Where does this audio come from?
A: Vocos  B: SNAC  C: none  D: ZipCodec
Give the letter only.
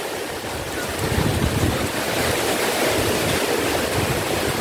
C